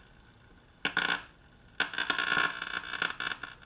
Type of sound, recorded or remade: recorded